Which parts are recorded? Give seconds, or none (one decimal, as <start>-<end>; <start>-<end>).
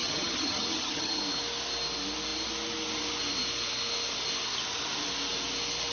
1.2-5.9